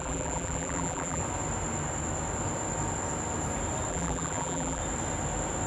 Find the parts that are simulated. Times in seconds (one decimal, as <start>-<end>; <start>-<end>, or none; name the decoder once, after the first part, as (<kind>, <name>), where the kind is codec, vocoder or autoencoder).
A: 0.0-1.2 (vocoder, BigVGAN v2); 3.9-4.8